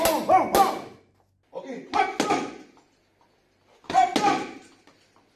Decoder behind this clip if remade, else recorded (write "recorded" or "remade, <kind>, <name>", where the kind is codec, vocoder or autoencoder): recorded